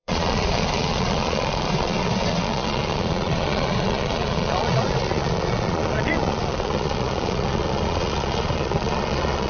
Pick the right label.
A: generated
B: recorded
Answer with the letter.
A